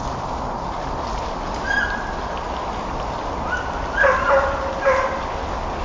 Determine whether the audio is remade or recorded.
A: recorded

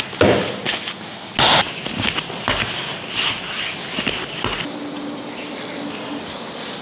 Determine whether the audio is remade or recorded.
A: recorded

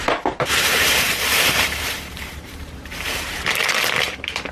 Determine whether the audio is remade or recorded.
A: remade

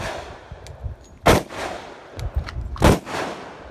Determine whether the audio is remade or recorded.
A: recorded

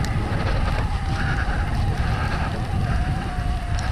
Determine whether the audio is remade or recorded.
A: recorded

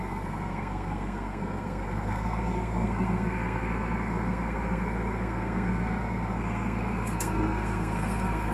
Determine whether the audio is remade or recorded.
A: remade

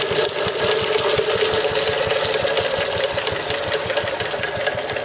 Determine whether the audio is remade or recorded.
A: recorded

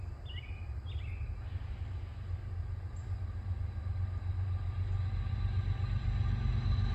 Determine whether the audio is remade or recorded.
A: recorded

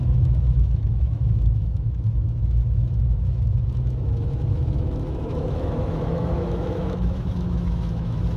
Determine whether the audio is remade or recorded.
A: remade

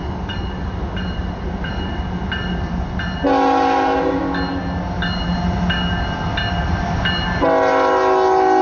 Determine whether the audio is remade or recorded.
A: recorded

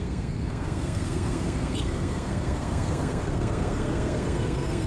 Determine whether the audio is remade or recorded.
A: remade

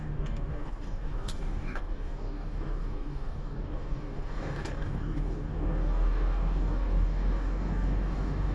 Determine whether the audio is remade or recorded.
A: remade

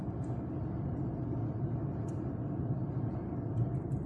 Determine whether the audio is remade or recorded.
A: recorded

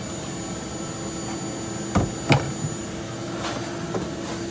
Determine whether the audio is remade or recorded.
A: recorded